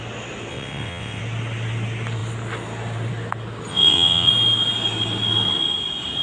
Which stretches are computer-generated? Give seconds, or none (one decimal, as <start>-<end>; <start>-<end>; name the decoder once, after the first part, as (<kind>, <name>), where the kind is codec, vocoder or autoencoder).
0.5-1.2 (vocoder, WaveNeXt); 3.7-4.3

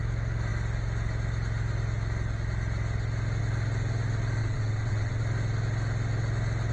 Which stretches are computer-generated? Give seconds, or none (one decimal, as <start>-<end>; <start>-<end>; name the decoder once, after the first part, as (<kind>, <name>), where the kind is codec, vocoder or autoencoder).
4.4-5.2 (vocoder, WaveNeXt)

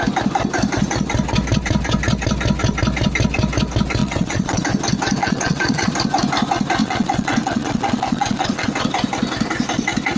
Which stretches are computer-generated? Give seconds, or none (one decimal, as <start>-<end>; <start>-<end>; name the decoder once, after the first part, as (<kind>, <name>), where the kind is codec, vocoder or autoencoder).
4.0-4.6 (vocoder, WaveNeXt); 5.2-5.9; 6.8-8.7

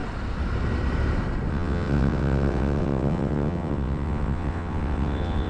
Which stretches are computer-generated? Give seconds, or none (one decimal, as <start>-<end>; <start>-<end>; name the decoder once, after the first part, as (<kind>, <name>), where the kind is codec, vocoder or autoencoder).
1.5-5.5 (vocoder, WaveNeXt)

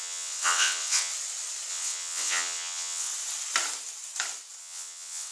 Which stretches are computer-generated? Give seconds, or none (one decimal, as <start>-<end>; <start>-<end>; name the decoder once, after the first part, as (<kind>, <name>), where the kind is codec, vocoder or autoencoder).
0.0-1.1 (vocoder, WaveNeXt); 1.7-3.1; 4.6-5.3

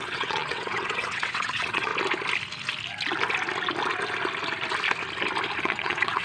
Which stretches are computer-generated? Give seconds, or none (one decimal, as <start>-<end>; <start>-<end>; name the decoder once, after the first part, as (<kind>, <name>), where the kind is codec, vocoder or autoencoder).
0.0-1.9 (vocoder, WaveNeXt); 5.6-6.2